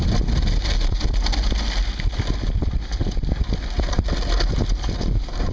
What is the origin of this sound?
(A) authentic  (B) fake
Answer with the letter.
A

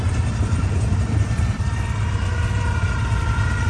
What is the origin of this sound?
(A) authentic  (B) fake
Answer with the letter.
B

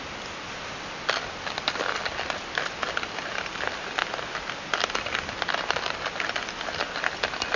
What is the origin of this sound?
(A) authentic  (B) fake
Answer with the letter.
A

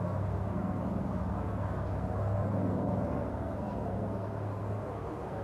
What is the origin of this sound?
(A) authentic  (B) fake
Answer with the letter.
B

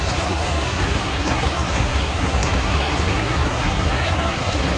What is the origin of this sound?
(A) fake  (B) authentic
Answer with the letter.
A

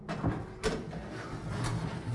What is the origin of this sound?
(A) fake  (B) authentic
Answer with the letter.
B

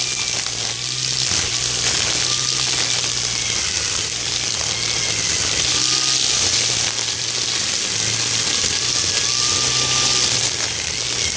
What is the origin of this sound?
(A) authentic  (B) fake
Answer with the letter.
A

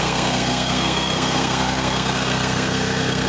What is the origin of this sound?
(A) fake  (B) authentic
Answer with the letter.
A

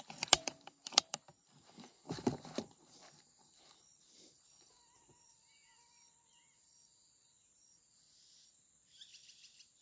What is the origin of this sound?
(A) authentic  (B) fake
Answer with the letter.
B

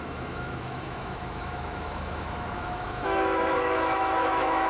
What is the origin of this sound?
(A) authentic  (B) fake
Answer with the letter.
B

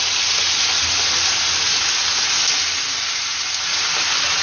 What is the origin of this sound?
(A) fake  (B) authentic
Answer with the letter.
B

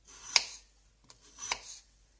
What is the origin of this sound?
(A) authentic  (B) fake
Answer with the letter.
A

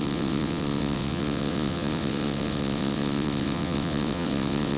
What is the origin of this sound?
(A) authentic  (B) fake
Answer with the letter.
B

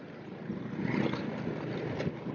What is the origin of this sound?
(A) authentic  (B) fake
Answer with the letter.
A